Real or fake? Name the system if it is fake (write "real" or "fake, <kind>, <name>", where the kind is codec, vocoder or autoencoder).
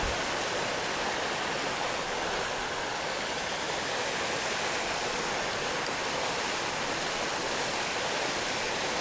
real